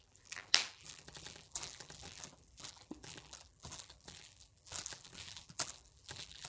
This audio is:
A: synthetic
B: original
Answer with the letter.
A